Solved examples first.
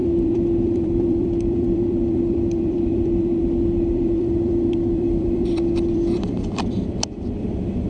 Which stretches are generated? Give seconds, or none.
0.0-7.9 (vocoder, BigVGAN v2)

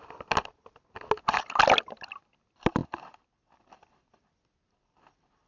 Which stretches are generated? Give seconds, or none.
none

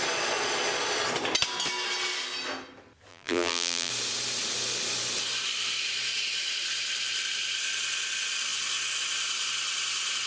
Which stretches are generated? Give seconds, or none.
3.1-3.9 (vocoder, BigVGAN v2)